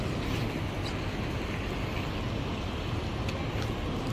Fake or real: real